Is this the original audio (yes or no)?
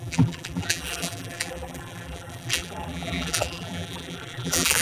no